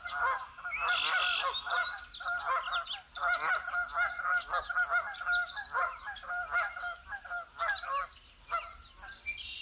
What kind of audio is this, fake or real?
real